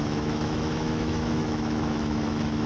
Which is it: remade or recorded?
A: remade